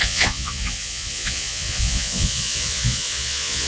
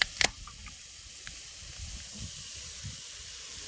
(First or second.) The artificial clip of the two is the first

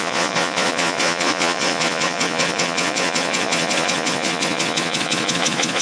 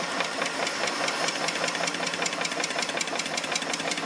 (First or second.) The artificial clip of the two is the first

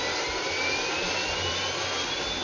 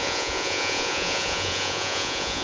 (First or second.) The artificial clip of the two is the second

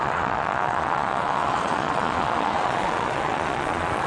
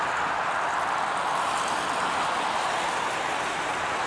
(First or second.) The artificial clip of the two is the first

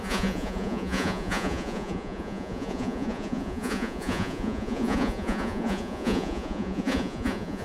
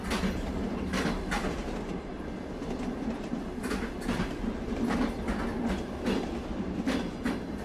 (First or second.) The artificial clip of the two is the first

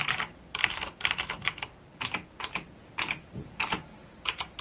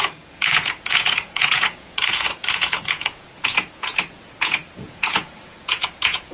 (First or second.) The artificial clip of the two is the second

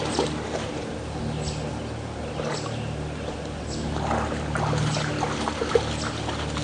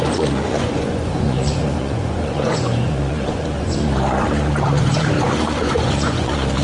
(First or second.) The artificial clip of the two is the second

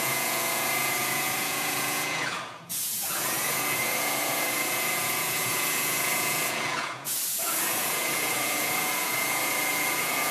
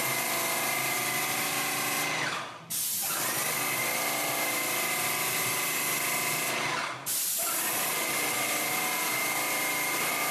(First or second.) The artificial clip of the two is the first